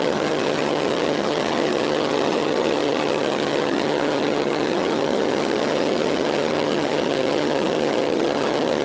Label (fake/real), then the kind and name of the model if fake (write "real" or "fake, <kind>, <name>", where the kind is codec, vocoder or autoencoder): fake, vocoder, HiFi-GAN